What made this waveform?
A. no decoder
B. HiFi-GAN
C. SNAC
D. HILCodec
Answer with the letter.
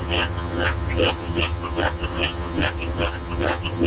B